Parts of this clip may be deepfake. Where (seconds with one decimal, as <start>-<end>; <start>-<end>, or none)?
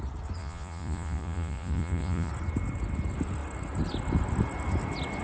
0.4-2.3